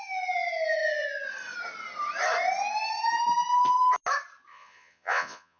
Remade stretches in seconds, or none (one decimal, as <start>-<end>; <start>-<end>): 4.5-5.6